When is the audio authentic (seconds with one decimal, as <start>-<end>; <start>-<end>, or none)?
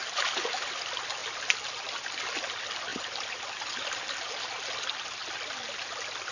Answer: 0.0-6.3